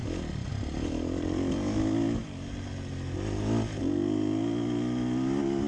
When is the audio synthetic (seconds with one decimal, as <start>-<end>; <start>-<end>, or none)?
none

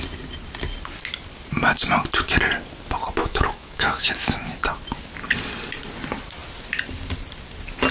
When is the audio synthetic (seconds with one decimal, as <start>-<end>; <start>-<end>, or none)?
3.2-4.6

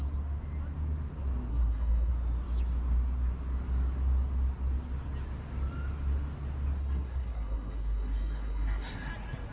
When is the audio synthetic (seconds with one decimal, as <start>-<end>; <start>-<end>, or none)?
1.5-2.1; 6.8-9.1

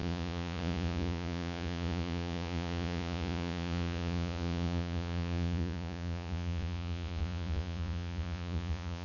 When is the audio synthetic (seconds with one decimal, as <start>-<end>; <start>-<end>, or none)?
0.0-9.0

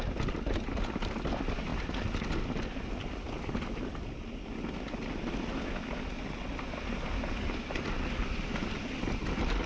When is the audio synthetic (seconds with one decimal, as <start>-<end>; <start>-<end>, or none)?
none

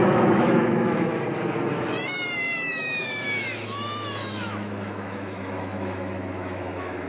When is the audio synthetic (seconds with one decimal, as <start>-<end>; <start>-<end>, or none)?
0.0-1.1; 1.8-7.1

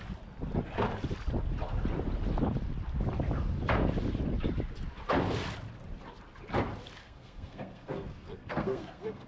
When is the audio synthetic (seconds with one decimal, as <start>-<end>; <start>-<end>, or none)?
7.0-9.3